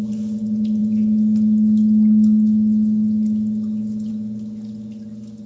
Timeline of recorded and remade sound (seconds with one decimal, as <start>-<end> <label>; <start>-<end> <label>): 0.0-5.5 recorded